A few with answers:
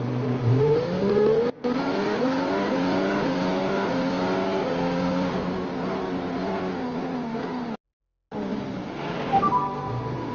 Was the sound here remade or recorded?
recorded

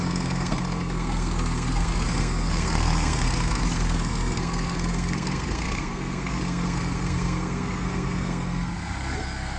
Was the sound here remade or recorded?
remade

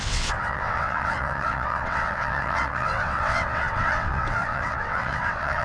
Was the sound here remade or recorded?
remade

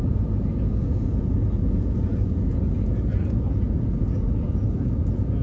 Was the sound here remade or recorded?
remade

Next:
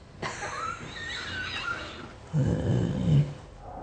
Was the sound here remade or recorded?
recorded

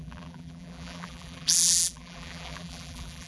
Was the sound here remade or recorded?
remade